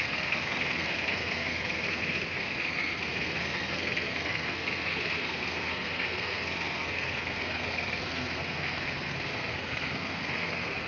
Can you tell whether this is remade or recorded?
remade